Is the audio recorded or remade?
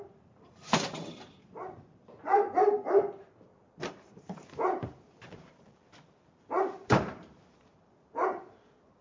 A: remade